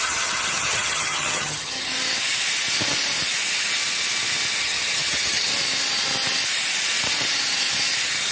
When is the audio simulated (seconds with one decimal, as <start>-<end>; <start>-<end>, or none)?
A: 0.0-1.9; 4.6-5.5